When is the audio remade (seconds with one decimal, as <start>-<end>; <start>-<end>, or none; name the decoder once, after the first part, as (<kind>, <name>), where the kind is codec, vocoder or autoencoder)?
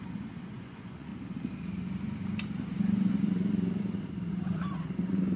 0.0-1.1 (vocoder, Vocos); 4.3-5.4